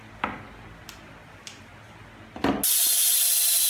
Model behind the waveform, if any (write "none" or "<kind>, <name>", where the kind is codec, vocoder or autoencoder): none